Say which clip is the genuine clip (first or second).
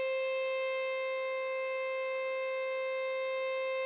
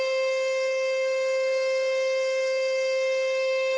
first